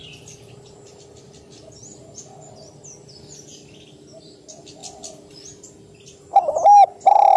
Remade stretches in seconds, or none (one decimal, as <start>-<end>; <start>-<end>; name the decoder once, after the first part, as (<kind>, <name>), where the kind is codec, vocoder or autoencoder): none